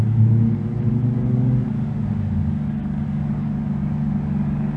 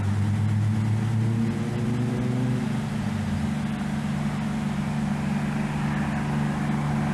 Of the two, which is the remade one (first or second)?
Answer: first